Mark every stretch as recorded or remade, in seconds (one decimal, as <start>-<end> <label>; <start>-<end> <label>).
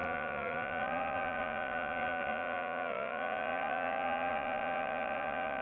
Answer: 0.0-5.6 remade